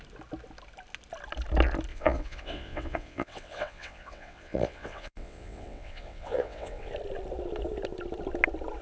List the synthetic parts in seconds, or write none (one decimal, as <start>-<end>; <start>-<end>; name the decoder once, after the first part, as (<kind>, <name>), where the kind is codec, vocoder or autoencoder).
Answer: 1.9-6.9 (vocoder, WaveNeXt)